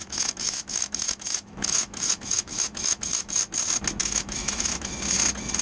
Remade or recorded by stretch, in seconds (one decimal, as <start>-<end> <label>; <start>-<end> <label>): 0.0-3.4 remade; 3.4-4.0 recorded; 4.0-4.9 remade; 4.9-5.6 recorded